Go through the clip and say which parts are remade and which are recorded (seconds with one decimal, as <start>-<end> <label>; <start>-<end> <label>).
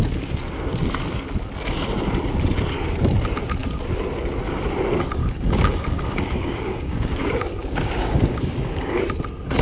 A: 0.0-5.2 recorded; 5.2-9.0 remade; 9.0-9.6 recorded